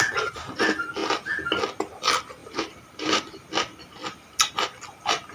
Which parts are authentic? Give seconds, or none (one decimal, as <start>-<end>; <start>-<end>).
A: 0.0-2.4; 3.4-5.3